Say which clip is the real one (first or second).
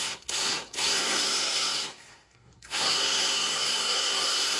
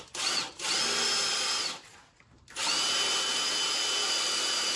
second